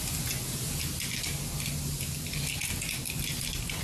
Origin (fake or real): real